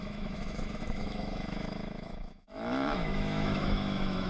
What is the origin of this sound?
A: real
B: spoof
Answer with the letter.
B